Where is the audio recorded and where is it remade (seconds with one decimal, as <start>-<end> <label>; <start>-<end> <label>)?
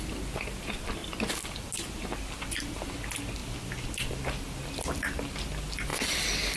0.0-1.0 recorded; 1.0-1.7 remade; 1.7-3.4 recorded; 3.4-5.3 remade; 5.3-5.9 recorded; 5.9-6.6 remade